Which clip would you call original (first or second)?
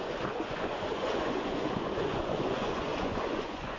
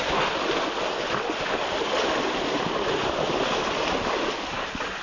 second